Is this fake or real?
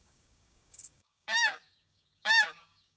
fake